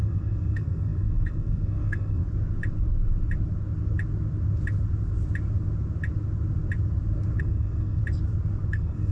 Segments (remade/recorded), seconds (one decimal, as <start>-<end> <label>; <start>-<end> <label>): 0.0-2.2 remade; 2.2-7.4 recorded; 7.4-8.0 remade; 8.0-8.7 recorded; 8.7-9.1 remade